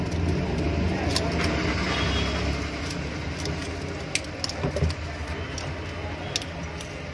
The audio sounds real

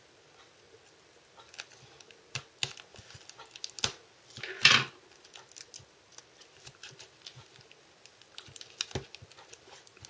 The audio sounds real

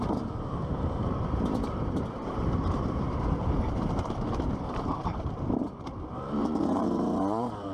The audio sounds fake